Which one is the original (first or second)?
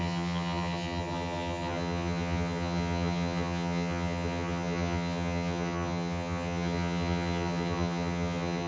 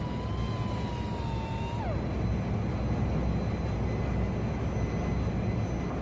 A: second